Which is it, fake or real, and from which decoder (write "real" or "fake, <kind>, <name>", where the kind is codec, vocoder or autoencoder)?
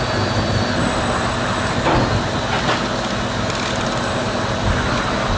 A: real